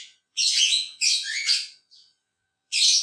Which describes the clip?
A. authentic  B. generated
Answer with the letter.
B